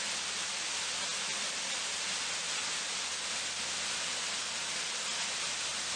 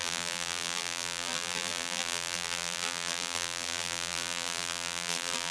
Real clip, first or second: first